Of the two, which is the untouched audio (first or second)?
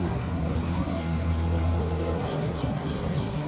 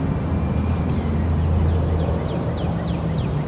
second